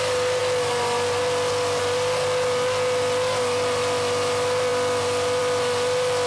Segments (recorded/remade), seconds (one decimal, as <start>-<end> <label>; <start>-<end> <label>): 0.0-6.3 recorded